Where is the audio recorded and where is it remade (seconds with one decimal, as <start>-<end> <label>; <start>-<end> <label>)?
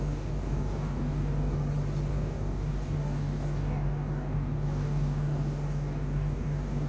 0.0-1.6 remade; 1.6-2.1 recorded; 2.1-6.9 remade